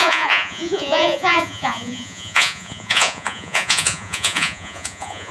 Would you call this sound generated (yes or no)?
yes